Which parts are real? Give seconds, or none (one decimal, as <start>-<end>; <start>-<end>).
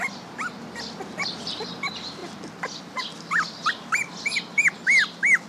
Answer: 0.0-5.5